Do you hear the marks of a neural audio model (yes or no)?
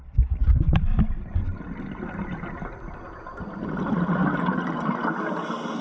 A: no